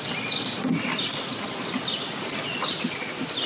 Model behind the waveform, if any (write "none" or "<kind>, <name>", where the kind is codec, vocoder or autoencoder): none